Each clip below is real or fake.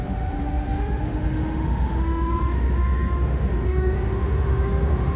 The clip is fake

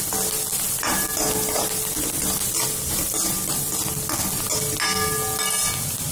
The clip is real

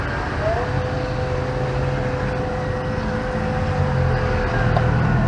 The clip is real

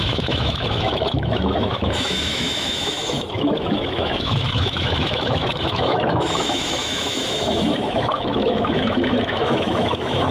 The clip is fake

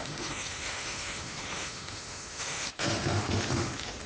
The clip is fake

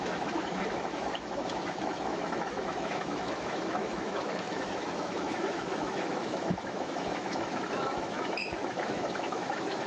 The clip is fake